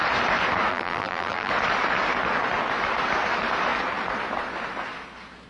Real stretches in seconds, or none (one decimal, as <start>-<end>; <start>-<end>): 0.0-0.7; 1.5-5.5